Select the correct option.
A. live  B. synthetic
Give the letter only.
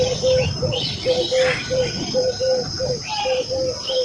A